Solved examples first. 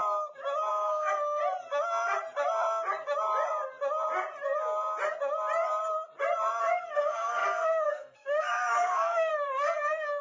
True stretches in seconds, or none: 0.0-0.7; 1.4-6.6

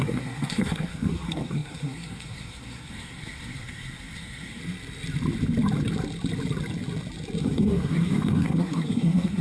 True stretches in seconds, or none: 4.6-7.4

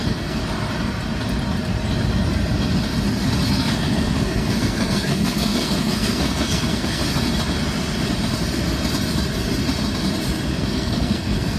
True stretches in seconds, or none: 0.4-3.5; 7.0-10.5

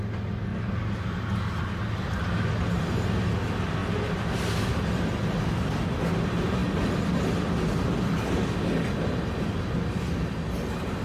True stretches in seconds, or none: 0.0-11.0

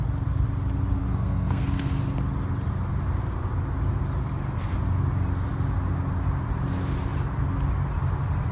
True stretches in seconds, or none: 0.0-1.0; 2.0-8.5

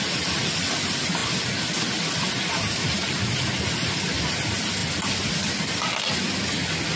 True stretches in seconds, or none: 0.0-7.0

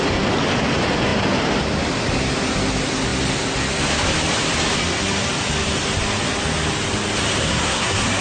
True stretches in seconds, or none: 0.0-7.4

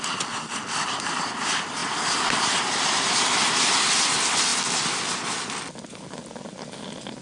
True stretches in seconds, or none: 0.0-7.2